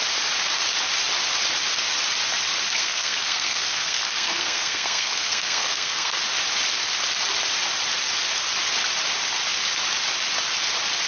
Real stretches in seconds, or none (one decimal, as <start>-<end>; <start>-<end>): 0.0-2.8; 6.2-11.1